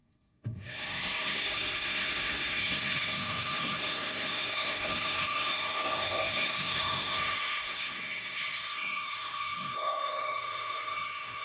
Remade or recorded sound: remade